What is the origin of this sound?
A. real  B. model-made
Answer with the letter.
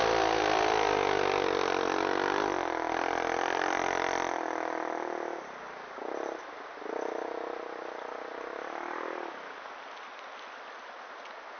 A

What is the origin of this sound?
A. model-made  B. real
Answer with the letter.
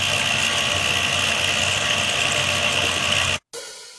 B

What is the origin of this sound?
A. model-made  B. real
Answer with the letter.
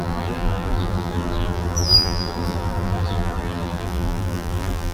A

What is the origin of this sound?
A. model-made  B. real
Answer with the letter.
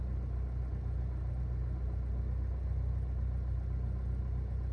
B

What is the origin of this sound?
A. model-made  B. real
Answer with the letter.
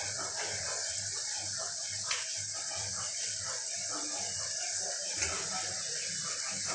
B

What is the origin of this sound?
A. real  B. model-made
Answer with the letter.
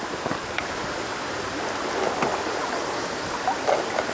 A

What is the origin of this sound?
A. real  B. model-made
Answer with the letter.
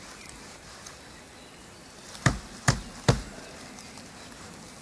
A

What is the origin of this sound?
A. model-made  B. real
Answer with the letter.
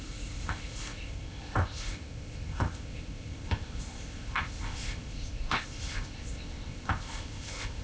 A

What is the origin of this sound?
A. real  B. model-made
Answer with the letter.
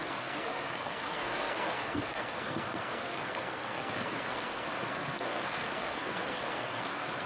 B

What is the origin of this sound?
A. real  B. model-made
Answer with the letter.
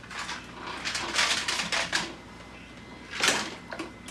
A